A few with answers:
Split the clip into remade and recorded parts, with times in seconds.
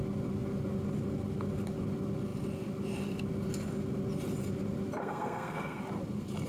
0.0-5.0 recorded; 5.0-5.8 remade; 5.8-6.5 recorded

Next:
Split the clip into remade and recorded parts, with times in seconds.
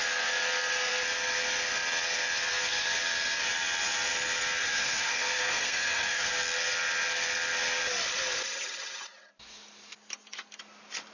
0.0-4.6 recorded; 4.6-6.3 remade; 6.3-11.1 recorded